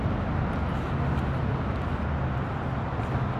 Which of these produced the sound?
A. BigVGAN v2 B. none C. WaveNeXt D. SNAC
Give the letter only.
B